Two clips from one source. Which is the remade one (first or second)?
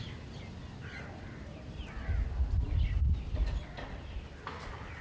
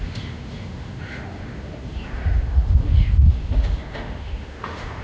second